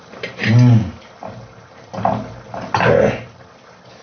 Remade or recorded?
recorded